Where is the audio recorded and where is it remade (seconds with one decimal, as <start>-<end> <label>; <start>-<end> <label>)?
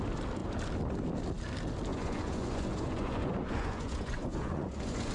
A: 0.0-1.9 recorded; 1.9-5.1 remade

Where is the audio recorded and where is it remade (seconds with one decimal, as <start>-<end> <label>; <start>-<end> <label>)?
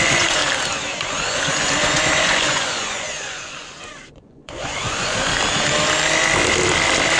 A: 0.0-0.4 remade; 0.4-1.1 recorded; 1.1-5.3 remade; 5.3-7.2 recorded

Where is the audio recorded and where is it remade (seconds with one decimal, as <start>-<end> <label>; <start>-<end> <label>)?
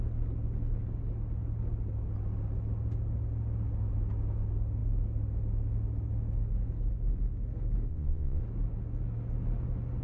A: 0.0-7.9 recorded; 7.9-8.4 remade; 8.4-10.0 recorded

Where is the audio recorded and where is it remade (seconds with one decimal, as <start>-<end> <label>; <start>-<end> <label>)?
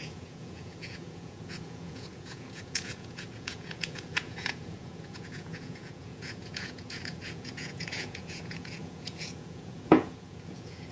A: 0.0-10.9 remade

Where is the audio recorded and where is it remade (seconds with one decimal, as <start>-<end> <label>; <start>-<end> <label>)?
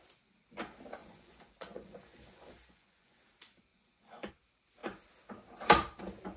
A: 0.0-1.0 recorded; 1.0-3.2 remade; 3.2-3.7 recorded; 3.7-4.3 remade; 4.3-6.4 recorded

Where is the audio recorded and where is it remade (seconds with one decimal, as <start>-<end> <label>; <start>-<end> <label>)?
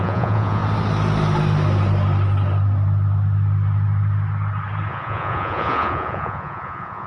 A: 0.0-0.6 remade; 0.6-4.9 recorded; 4.9-7.1 remade